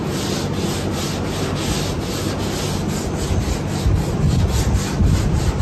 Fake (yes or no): no